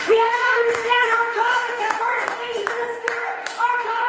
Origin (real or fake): fake